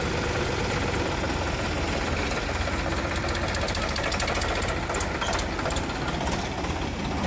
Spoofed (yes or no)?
no